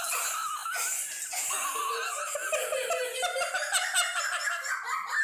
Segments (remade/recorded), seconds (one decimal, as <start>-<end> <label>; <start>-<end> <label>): 0.0-5.2 recorded